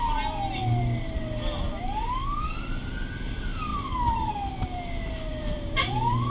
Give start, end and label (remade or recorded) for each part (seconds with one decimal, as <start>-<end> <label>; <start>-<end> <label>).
0.0-3.7 recorded; 3.7-4.3 remade; 4.3-5.3 recorded; 5.3-6.3 remade

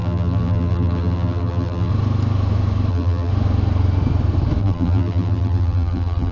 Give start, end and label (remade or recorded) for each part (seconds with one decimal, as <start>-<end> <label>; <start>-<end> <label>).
0.0-1.9 remade; 1.9-2.9 recorded; 2.9-3.3 remade; 3.3-4.6 recorded; 4.6-6.3 remade

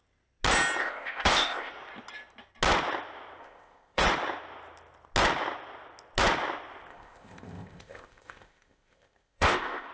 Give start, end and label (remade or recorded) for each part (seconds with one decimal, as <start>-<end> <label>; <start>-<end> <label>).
0.0-0.8 recorded; 0.8-1.7 remade; 1.7-3.4 recorded; 3.4-4.0 remade; 4.0-6.9 recorded; 6.9-9.9 remade

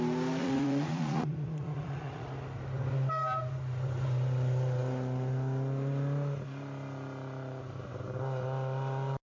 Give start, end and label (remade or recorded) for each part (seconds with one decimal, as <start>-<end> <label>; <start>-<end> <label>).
0.0-0.4 recorded; 0.4-2.3 remade; 2.3-9.3 recorded

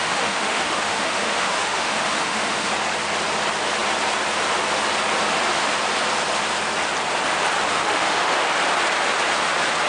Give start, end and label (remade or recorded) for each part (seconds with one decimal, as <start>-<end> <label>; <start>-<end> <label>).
0.0-2.7 remade; 2.7-7.7 recorded; 7.7-8.3 remade; 8.3-9.9 recorded

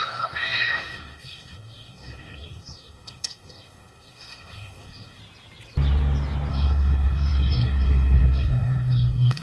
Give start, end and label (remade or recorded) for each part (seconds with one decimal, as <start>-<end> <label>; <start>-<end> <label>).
0.0-5.2 remade; 5.2-6.5 recorded; 6.5-9.4 remade